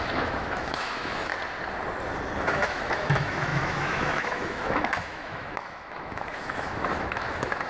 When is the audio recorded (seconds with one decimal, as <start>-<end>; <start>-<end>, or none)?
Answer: 1.3-2.4